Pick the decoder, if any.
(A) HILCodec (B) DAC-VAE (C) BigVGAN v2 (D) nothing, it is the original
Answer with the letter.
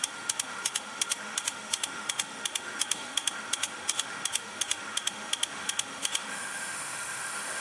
B